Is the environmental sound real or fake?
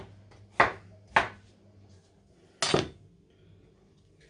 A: real